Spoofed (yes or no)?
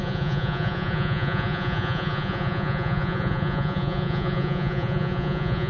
yes